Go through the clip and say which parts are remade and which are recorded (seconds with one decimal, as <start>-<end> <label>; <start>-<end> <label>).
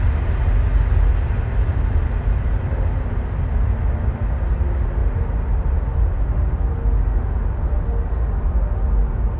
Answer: 0.0-9.4 recorded